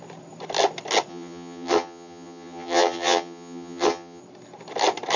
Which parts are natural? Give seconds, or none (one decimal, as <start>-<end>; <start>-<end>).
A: 0.0-1.1; 4.2-5.2